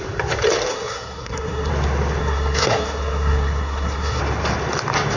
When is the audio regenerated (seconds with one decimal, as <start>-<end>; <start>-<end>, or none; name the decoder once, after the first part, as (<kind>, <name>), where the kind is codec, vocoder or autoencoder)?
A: 0.7-1.7 (codec, SNAC); 2.2-4.2